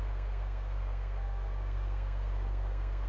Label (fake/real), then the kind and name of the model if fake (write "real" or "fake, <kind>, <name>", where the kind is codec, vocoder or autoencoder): fake, codec, SNAC